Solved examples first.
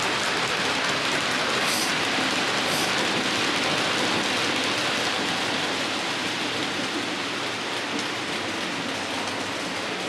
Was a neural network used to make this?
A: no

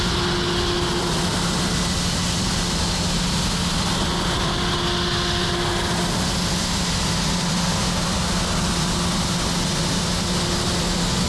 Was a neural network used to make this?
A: no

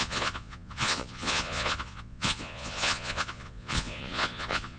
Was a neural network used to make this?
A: yes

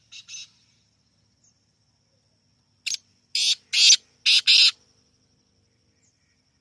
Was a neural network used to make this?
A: no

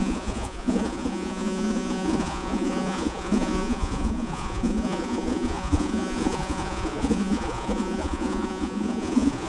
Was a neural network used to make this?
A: yes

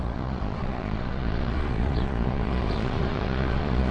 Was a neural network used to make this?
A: yes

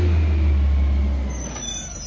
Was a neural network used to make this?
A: no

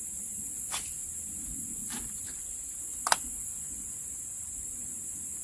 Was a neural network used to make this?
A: no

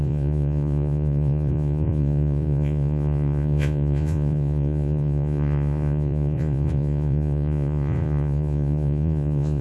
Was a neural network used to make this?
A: yes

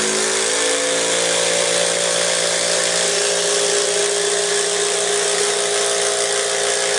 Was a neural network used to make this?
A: no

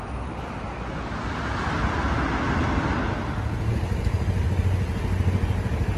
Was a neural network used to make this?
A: no